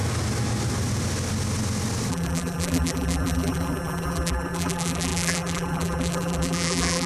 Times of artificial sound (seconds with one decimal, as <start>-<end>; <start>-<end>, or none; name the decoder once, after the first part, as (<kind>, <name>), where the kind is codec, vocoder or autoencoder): 2.1-7.1 (vocoder, BigVGAN v2)